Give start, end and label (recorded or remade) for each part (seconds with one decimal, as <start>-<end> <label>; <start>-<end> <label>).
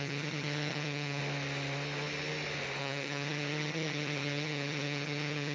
0.0-1.2 remade; 1.2-2.8 recorded; 2.8-5.5 remade